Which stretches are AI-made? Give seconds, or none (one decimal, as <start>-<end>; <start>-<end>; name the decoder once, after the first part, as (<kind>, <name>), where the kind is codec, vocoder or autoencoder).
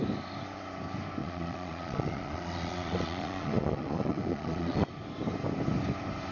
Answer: 1.2-4.9 (vocoder, Vocos)